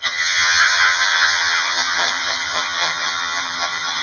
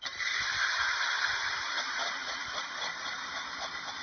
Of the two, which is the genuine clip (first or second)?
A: second